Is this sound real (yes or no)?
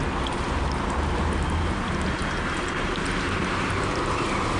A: yes